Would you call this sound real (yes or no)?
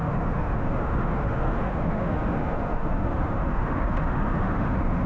no